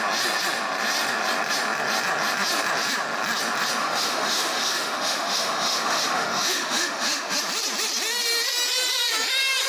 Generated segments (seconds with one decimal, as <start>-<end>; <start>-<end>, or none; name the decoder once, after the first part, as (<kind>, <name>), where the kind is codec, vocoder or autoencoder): 3.8-7.4 (autoencoder, DAC-VAE)